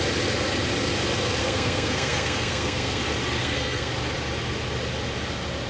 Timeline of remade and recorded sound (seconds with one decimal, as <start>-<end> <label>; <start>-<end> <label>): 0.0-1.4 recorded; 1.4-3.0 remade; 3.0-3.4 recorded; 3.4-3.9 remade; 3.9-5.7 recorded